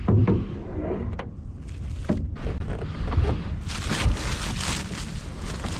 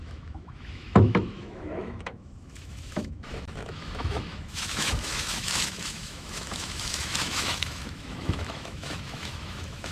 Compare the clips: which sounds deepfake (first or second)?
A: second